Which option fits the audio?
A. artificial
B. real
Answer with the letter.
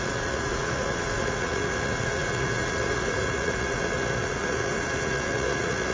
A